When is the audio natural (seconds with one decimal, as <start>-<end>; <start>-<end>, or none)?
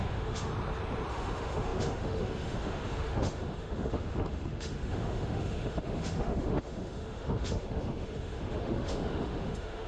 0.5-1.1